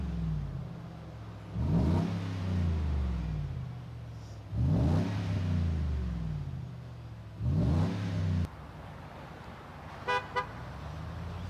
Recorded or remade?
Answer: recorded